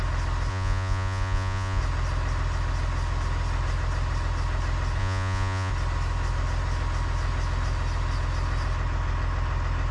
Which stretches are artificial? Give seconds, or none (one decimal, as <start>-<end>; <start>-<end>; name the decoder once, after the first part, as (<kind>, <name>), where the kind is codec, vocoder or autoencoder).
0.5-1.8 (vocoder, Vocos); 5.0-5.7